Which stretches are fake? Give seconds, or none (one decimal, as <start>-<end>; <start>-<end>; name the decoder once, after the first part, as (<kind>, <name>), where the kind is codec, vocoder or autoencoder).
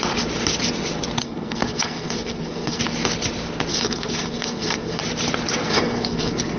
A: 1.2-2.8 (codec, SNAC); 3.7-5.0; 5.6-6.6